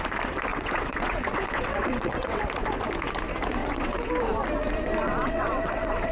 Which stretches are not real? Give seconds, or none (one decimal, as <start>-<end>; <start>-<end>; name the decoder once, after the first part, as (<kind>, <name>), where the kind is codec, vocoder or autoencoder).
0.5-2.4 (vocoder, WaveNeXt); 3.6-4.1; 5.0-6.1